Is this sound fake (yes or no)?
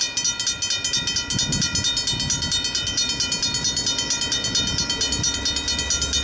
no